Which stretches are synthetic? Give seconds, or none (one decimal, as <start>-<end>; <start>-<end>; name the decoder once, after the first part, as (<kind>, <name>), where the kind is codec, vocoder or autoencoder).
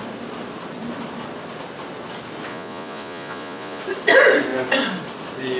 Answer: 2.5-3.8 (vocoder, Vocos)